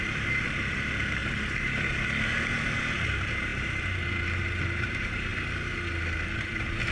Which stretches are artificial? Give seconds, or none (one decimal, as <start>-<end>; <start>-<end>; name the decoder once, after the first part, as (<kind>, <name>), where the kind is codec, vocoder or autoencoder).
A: 0.0-1.2 (vocoder, BigVGAN v2); 2.8-5.3; 6.4-6.9